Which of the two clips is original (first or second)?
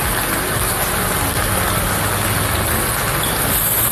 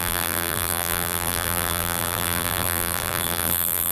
first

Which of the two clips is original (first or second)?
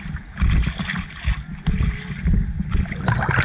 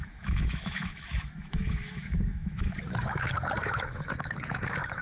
first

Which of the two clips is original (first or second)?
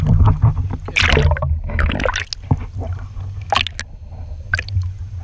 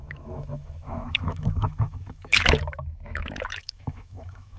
first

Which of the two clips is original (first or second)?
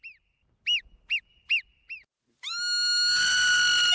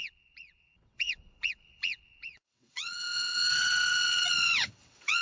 first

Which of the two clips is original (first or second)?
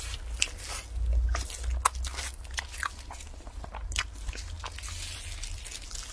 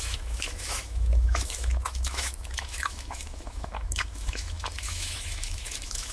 first